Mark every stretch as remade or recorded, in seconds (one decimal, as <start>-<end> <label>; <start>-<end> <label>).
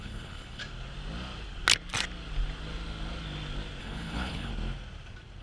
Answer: 0.0-0.6 remade; 0.6-3.8 recorded; 3.8-4.5 remade; 4.5-5.4 recorded